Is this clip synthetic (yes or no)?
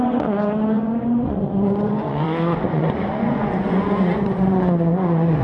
yes